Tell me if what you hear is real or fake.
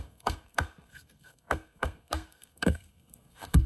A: fake